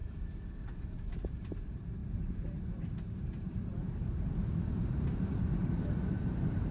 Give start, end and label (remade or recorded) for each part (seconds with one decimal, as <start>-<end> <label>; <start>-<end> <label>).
0.0-0.8 recorded; 0.8-6.7 remade